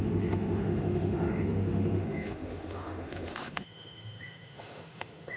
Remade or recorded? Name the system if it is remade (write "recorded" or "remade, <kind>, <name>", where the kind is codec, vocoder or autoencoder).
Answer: remade, autoencoder, DAC-VAE